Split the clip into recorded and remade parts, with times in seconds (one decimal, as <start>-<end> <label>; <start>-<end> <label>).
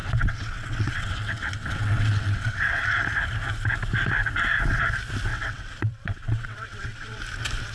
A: 0.0-2.8 remade; 2.8-5.3 recorded; 5.3-7.2 remade; 7.2-7.7 recorded